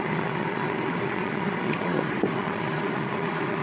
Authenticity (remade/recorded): remade